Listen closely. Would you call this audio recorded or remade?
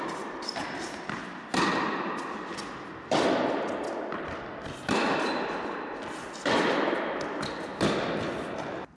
recorded